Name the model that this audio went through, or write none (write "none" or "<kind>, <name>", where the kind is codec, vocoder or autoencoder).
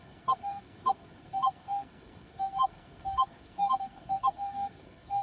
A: codec, SNAC